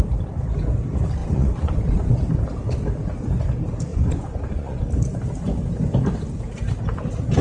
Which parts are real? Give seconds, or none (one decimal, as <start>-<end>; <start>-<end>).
0.0-1.2; 2.1-3.9; 4.8-7.4